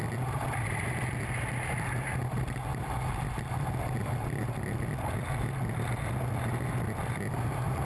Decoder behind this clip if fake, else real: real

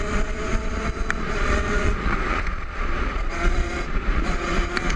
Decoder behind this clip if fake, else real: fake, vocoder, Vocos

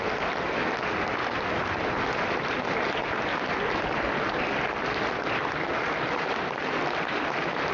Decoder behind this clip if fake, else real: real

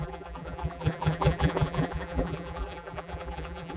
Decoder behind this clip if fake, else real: fake, vocoder, BigVGAN v2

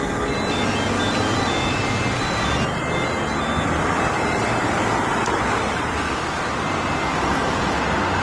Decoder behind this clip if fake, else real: real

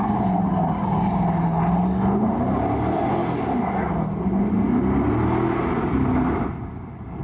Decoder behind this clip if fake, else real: real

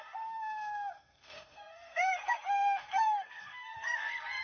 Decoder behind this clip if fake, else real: fake, codec, SNAC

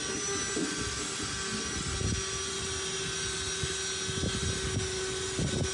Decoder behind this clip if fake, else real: real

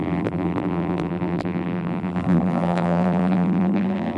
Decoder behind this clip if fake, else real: fake, vocoder, BigVGAN v2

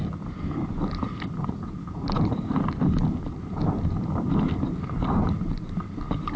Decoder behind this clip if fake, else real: real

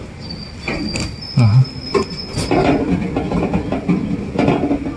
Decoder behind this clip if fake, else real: real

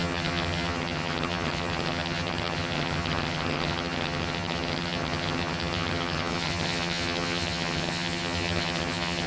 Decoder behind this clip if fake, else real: fake, vocoder, HiFi-GAN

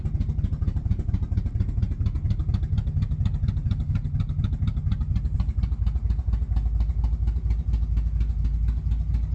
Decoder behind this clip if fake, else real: real